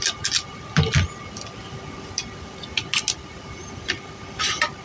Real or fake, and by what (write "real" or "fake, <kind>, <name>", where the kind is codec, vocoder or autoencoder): real